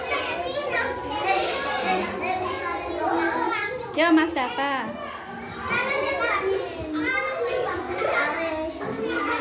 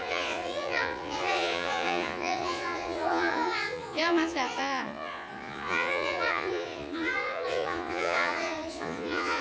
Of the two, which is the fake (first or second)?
second